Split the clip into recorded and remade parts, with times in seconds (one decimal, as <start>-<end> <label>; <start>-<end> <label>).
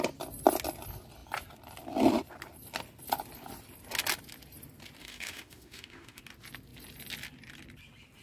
0.0-5.0 recorded; 5.0-6.2 remade; 6.2-8.2 recorded